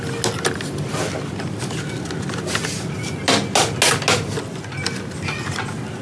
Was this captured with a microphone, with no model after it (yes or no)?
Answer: yes